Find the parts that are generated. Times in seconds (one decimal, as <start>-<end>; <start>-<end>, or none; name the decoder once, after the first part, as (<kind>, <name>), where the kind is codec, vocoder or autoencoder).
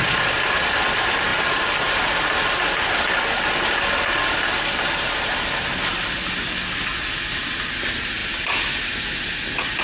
1.3-2.0 (vocoder, BigVGAN v2); 8.2-8.9